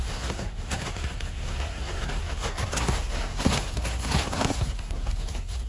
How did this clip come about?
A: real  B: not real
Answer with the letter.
B